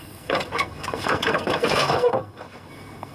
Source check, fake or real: fake